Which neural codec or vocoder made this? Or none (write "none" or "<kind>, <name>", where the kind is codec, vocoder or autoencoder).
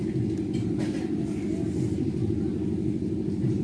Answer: none